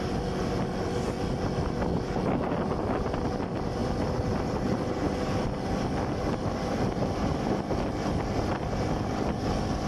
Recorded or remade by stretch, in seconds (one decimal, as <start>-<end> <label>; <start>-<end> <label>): 0.0-9.9 recorded